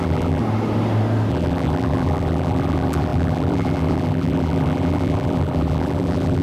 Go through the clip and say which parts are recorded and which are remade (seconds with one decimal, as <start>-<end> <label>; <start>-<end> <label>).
0.0-0.4 remade; 0.4-1.3 recorded; 1.3-6.4 remade